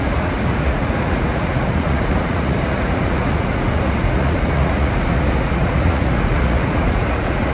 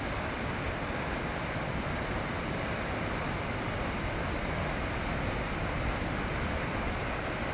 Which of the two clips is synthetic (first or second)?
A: first